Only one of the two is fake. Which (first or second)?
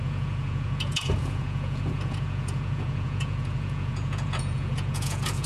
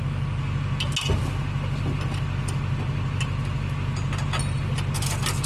first